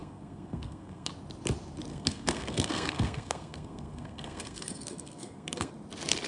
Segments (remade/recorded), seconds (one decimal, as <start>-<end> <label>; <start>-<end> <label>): 0.0-1.1 remade; 1.1-1.9 recorded; 1.9-5.7 remade; 5.7-6.3 recorded